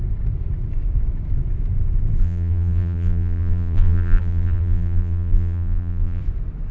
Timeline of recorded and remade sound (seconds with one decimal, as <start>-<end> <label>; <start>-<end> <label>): 0.0-2.2 recorded; 2.2-6.2 remade; 6.2-6.7 recorded